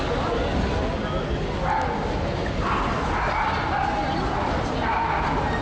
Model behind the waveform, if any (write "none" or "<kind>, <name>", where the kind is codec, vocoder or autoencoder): none